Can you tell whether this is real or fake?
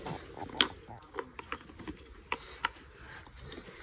real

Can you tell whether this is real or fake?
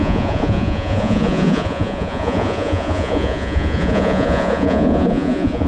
fake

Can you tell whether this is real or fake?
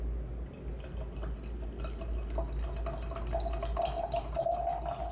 real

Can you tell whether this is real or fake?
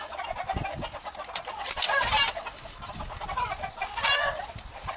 real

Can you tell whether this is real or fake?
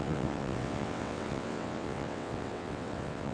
fake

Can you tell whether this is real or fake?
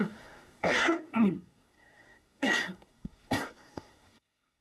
fake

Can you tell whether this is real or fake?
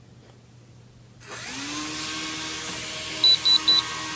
real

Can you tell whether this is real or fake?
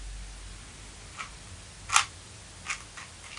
real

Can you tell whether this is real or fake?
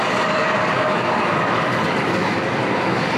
fake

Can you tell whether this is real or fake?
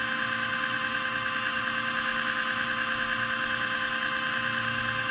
fake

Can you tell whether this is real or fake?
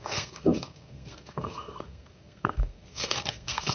fake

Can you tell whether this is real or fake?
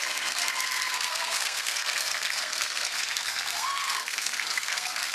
fake